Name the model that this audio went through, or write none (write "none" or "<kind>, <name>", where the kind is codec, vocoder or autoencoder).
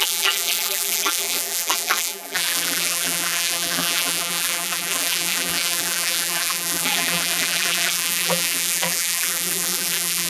vocoder, BigVGAN v2